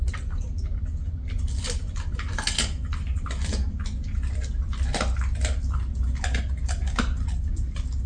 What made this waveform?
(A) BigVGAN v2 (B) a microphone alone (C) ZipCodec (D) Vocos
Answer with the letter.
B